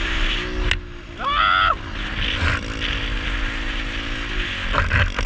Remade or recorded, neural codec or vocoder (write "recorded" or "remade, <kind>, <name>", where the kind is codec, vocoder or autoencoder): recorded